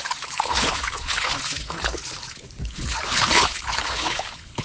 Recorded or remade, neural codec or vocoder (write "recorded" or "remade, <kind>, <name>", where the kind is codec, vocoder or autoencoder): remade, codec, HILCodec